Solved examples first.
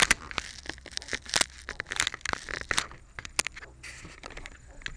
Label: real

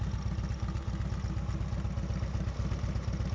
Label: real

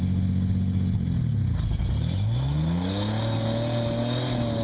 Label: real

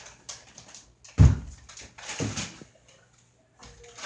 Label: real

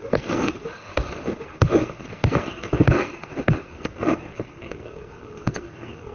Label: fake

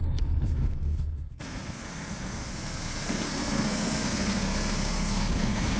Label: fake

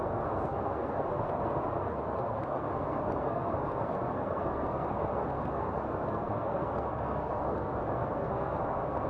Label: fake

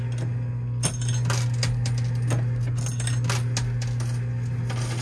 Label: real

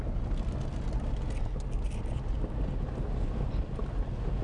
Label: real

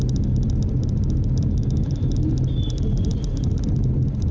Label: real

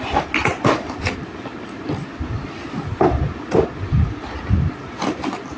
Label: real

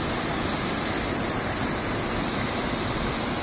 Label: real